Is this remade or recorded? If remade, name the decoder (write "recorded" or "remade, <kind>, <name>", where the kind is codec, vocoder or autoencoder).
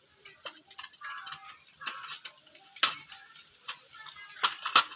recorded